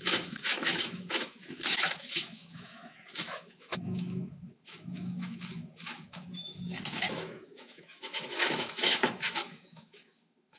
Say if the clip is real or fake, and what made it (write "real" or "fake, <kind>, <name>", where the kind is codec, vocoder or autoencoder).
fake, autoencoder, DAC-VAE